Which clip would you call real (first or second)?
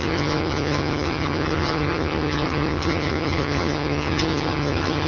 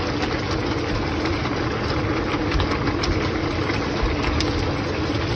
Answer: second